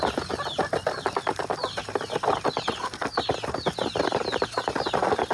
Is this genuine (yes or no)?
yes